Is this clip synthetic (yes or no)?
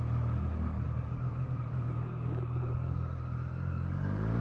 yes